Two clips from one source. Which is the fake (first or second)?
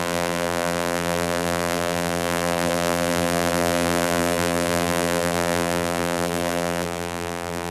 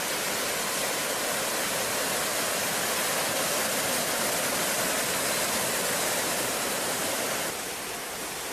first